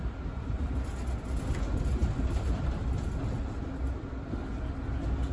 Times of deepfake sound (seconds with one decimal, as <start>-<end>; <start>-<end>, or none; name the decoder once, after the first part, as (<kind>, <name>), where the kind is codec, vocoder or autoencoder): none

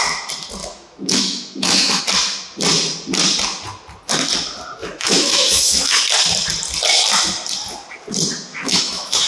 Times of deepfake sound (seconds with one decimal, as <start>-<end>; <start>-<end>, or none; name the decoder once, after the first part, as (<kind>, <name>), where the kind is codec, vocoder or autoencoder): 0.6-2.0 (autoencoder, DAC-VAE); 4.8-6.0; 8.5-9.3

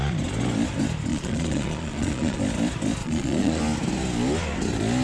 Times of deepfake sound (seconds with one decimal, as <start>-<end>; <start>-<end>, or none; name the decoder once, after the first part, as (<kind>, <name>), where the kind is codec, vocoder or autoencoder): 1.1-2.4 (vocoder, Vocos); 3.0-3.6

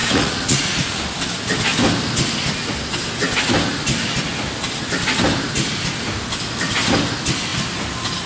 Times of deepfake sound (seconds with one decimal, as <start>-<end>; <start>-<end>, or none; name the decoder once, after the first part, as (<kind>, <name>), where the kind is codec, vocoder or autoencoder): 0.0-1.0 (vocoder, Vocos)

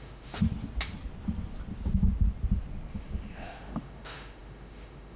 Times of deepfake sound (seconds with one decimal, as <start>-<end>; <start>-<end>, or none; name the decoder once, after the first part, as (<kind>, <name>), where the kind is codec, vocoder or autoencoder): 0.0-0.4 (autoencoder, DAC-VAE); 2.9-5.2